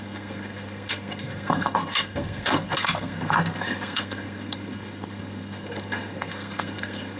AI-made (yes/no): yes